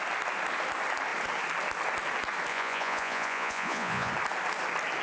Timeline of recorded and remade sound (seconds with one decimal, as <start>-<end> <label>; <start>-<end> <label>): 0.0-2.5 recorded; 2.5-4.1 remade; 4.1-5.0 recorded